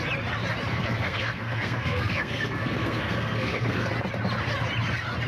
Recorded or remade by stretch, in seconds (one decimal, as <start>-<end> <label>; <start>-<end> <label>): 0.0-0.7 recorded; 0.7-3.9 remade; 3.9-5.3 recorded